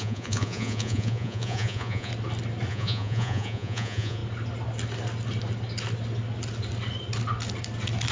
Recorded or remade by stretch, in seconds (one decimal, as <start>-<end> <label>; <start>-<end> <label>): 0.0-2.1 remade; 2.1-2.7 recorded; 2.7-4.2 remade; 4.2-8.1 recorded